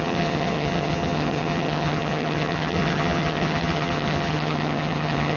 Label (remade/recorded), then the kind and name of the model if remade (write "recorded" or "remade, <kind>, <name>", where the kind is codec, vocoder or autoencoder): remade, vocoder, HiFi-GAN